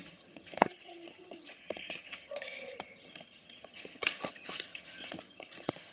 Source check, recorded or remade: remade